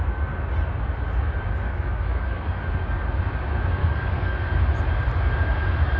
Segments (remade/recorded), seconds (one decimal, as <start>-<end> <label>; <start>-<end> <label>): 0.0-1.5 recorded; 1.5-2.6 remade; 2.6-3.8 recorded; 3.8-4.3 remade; 4.3-6.0 recorded